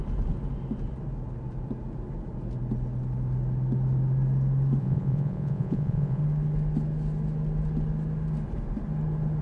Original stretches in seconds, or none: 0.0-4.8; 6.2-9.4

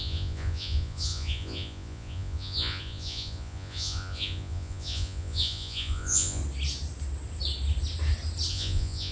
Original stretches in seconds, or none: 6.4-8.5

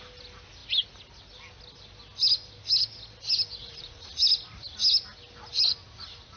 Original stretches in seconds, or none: 0.0-3.6; 4.2-6.4